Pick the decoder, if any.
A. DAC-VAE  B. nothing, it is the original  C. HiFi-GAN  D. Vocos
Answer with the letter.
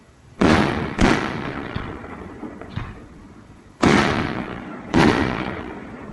D